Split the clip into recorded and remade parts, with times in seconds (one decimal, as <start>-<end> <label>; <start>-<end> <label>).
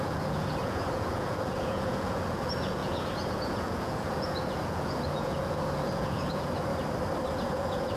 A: 0.0-6.7 remade; 6.7-7.3 recorded; 7.3-8.0 remade